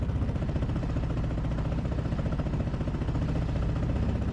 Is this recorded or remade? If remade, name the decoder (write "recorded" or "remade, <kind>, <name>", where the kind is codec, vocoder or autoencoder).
recorded